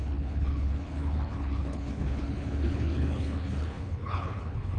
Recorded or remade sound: remade